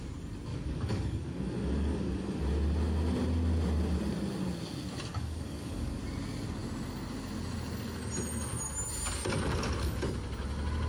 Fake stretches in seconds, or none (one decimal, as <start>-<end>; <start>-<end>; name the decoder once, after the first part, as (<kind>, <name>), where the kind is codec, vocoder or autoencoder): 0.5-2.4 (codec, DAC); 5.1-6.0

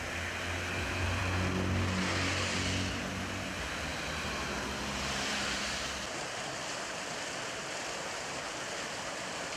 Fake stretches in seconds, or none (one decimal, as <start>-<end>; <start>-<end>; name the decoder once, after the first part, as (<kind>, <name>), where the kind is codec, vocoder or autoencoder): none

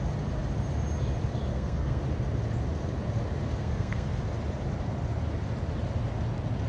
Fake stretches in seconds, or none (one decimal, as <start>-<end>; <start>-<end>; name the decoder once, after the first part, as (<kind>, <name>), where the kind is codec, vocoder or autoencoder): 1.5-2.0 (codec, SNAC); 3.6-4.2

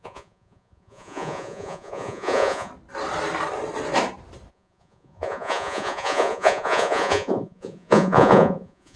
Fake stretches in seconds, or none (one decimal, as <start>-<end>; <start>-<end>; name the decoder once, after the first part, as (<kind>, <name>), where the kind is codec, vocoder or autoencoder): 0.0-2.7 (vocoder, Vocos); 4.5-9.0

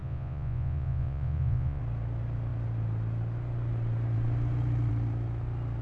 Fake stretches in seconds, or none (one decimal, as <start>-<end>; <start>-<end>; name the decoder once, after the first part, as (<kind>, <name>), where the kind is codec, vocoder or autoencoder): 0.0-1.8 (vocoder, Vocos)

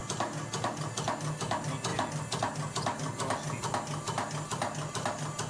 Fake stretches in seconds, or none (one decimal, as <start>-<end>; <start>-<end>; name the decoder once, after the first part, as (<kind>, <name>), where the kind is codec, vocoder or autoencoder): none